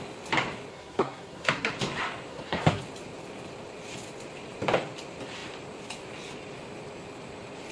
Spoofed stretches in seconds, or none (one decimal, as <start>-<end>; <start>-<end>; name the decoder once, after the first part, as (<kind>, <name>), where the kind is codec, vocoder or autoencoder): 0.7-1.7 (codec, SNAC); 2.3-2.8